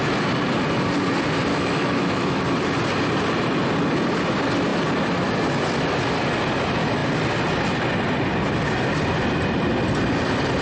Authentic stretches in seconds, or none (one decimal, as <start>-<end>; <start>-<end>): 0.0-1.5; 2.4-10.6